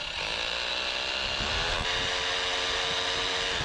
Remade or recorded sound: recorded